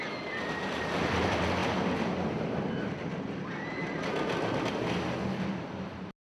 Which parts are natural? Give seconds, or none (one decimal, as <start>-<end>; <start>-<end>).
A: 0.0-6.4